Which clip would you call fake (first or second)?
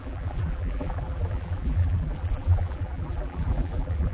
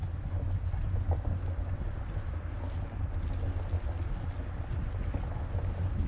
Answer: first